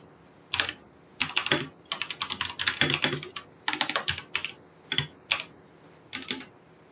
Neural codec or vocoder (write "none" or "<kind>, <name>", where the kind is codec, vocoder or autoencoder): none